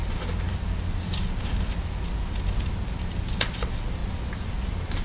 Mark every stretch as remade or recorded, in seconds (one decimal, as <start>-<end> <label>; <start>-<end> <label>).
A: 0.0-5.0 recorded